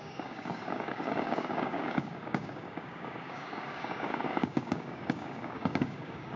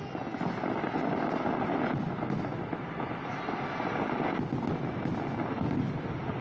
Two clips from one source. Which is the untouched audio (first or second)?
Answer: second